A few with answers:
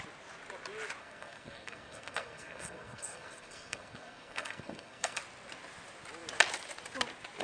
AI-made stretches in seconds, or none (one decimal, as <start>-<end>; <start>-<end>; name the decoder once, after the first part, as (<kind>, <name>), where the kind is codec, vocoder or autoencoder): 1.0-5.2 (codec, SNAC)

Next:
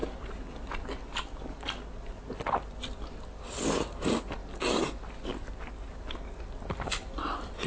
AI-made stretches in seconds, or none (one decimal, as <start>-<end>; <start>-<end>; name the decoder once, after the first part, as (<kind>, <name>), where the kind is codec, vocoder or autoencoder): none

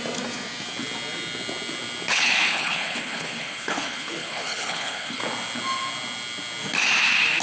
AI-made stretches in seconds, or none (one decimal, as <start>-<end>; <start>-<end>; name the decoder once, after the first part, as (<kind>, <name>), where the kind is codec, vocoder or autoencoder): 2.1-5.2 (codec, HILCodec)

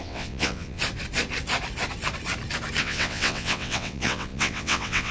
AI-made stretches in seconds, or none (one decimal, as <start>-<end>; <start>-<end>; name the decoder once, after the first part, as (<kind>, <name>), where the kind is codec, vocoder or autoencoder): 0.0-0.8 (vocoder, WaveNeXt); 2.8-5.1

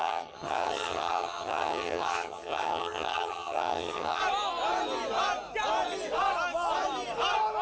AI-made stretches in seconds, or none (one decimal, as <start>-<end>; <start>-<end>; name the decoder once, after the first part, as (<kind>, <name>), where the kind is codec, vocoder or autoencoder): 0.0-4.2 (vocoder, HiFi-GAN)

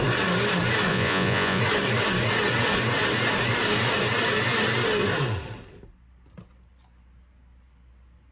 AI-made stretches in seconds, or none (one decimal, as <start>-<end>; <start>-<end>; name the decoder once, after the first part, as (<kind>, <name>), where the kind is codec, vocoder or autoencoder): 0.9-1.6 (vocoder, Vocos)

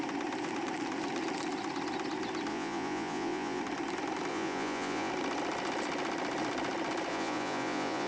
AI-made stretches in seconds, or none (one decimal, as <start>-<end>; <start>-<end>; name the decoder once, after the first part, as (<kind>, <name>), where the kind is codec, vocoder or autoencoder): 2.5-3.6 (vocoder, Vocos); 4.3-5.1; 7.1-8.1

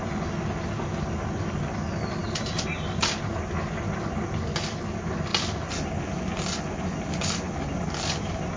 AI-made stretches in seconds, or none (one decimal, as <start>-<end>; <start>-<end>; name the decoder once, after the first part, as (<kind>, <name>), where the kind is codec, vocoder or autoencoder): none